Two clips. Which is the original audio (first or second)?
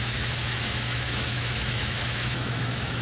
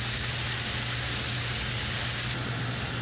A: second